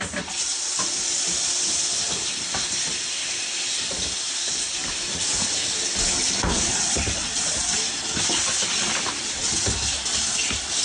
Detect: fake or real real